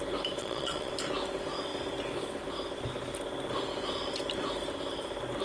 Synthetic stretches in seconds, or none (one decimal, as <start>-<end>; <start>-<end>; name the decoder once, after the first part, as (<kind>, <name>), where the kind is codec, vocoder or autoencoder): 0.4-0.9 (vocoder, Vocos)